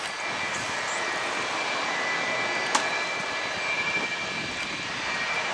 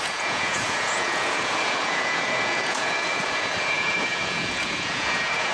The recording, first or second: first